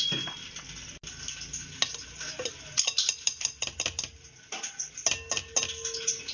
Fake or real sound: real